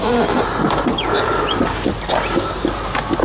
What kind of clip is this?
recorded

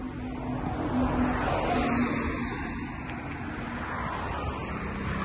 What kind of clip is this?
recorded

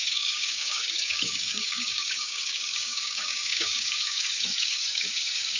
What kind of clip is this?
remade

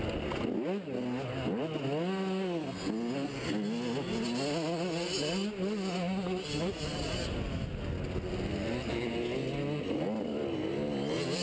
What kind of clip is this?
recorded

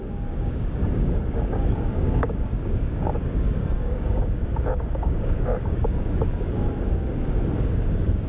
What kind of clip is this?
remade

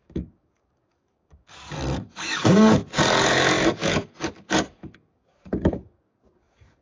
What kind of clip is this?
remade